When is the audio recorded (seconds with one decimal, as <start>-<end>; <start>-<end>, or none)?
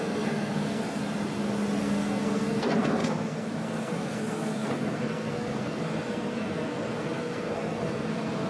1.0-1.8